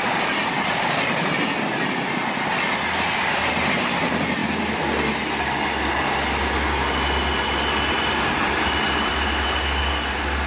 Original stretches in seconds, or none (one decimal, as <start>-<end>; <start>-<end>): 0.0-10.5